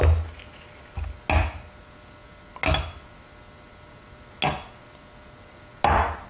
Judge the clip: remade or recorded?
recorded